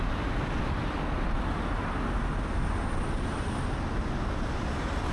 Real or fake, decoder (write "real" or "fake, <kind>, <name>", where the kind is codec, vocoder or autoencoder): real